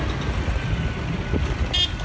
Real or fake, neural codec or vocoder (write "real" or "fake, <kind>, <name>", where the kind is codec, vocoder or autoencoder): real